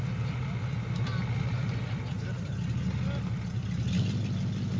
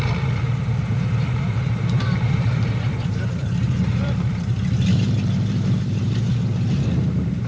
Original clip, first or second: first